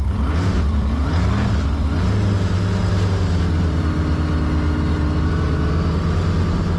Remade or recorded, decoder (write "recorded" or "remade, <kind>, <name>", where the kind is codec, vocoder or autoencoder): recorded